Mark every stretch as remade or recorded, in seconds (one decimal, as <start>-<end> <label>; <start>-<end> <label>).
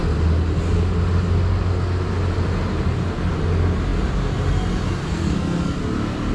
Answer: 0.0-5.0 recorded; 5.0-5.8 remade; 5.8-6.3 recorded